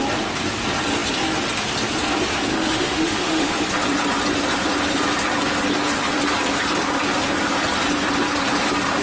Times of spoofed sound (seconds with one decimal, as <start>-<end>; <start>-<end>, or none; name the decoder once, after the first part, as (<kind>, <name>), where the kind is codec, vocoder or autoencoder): 2.5-3.6 (autoencoder, DAC-VAE)